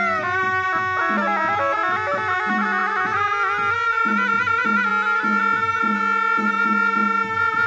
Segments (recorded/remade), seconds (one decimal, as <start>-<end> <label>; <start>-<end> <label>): 0.0-7.7 recorded